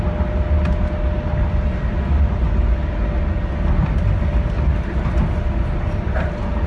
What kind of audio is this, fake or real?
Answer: real